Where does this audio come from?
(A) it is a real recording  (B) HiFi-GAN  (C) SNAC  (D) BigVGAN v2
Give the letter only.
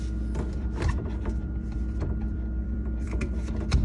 D